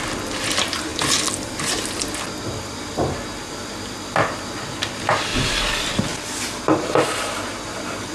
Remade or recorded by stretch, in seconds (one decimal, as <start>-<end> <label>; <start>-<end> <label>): 0.0-5.3 recorded; 5.3-6.6 remade; 6.6-8.1 recorded